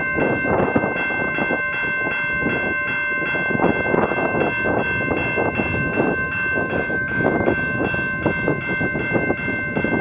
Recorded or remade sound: recorded